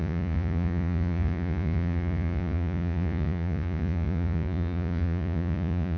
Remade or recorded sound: remade